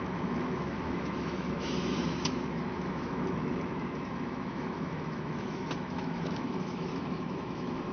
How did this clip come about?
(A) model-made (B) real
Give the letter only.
A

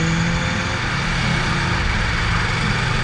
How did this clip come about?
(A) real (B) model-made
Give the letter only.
A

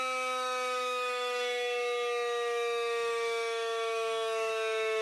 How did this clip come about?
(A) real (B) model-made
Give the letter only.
B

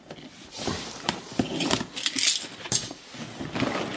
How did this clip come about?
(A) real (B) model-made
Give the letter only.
A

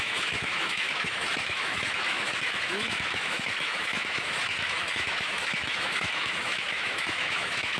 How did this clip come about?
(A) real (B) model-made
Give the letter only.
B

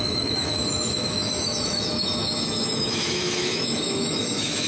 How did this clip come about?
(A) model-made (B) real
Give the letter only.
A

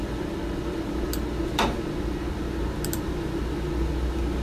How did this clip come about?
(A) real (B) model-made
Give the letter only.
A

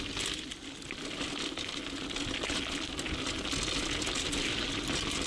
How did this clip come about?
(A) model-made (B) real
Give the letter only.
B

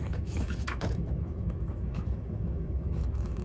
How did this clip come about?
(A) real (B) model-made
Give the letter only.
B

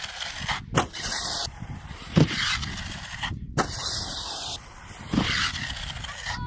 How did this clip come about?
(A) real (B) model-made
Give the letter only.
A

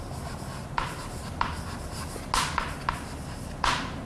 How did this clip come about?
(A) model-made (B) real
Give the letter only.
B